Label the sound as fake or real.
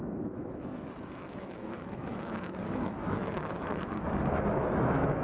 fake